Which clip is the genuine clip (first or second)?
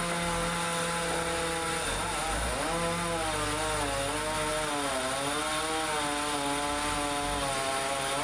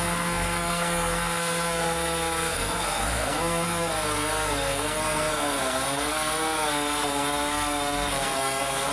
first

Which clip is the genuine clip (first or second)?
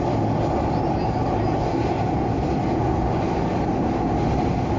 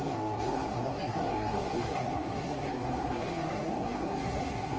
first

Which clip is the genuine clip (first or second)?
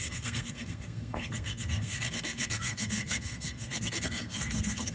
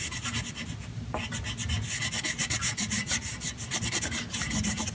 second